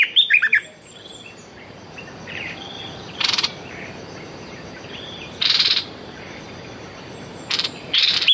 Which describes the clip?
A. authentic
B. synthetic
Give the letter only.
B